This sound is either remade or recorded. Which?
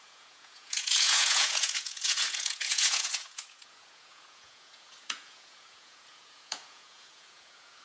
remade